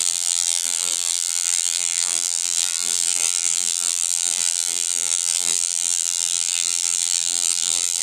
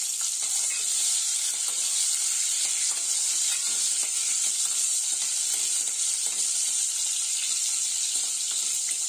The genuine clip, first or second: second